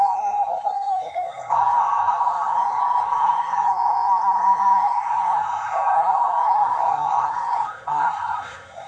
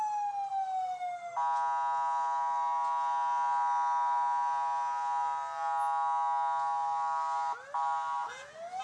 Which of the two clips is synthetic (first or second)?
first